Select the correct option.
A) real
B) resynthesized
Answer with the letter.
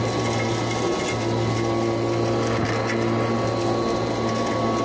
A